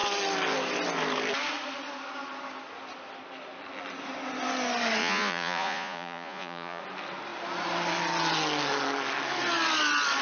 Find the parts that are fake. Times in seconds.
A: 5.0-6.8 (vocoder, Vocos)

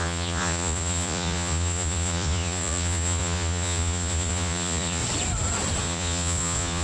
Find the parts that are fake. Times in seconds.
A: 0.0-5.0 (vocoder, Vocos); 5.8-6.8

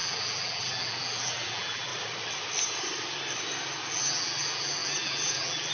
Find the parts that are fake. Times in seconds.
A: 0.0-1.9 (vocoder, BigVGAN v2); 3.9-5.7

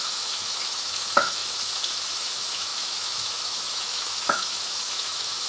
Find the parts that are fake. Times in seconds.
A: 0.0-5.5 (autoencoder, DAC-VAE)

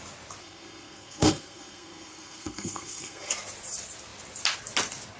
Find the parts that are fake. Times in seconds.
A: 0.4-3.3 (codec, SNAC)

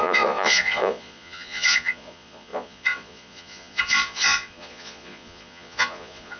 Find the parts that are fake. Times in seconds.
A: 0.0-6.4 (vocoder, Vocos)

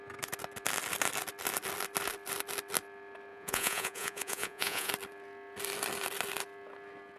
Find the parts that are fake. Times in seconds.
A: 3.3-4.9 (vocoder, Vocos)